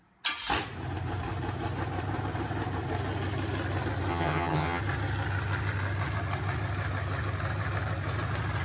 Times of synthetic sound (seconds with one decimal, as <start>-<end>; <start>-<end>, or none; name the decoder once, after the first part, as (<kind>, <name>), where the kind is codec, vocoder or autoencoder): 4.1-4.8 (vocoder, HiFi-GAN)